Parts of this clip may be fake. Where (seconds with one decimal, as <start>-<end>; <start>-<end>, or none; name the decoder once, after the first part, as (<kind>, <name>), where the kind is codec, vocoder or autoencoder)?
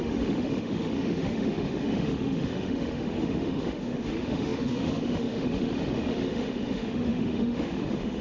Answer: 0.0-8.2 (autoencoder, DAC-VAE)